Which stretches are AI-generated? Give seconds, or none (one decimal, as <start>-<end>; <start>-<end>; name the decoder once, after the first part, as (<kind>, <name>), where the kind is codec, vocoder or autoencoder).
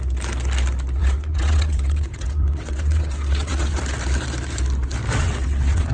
1.0-3.8 (vocoder, WaveNeXt); 5.2-5.9